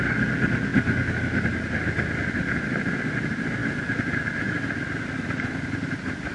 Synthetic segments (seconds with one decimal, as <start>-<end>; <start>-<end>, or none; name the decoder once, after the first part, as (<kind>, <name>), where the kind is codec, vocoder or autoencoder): none